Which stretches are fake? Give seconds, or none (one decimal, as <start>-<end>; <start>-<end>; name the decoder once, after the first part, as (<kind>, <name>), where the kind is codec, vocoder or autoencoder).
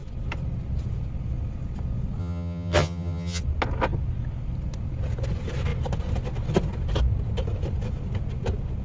2.2-3.4 (vocoder, HiFi-GAN)